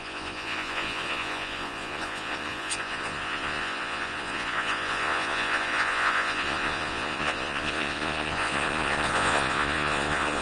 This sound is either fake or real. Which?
fake